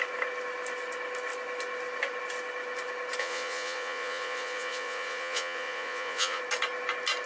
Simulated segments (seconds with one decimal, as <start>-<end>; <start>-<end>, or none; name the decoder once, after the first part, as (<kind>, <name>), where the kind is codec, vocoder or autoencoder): 3.2-6.4 (vocoder, Vocos)